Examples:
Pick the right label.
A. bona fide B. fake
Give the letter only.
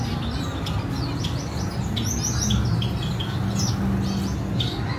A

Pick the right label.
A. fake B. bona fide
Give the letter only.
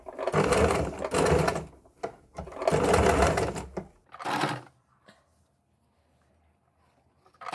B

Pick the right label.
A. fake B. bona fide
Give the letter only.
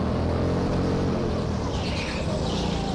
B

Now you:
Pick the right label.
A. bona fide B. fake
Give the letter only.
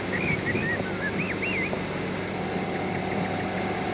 A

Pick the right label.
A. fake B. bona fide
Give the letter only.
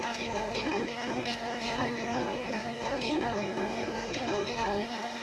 A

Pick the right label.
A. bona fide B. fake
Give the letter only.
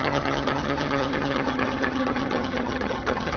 B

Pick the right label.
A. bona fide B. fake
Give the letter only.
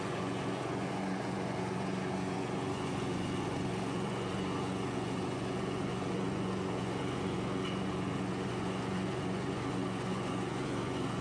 B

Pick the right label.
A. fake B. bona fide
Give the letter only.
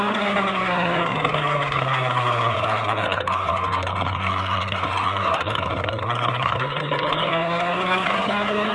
A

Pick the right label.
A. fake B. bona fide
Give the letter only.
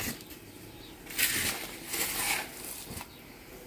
B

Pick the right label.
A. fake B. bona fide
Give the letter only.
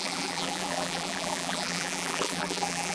A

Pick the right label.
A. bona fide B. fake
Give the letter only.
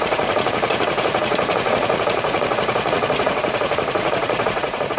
B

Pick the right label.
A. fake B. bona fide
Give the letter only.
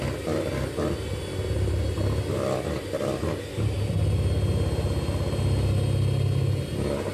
B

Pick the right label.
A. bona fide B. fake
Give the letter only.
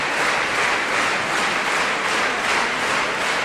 A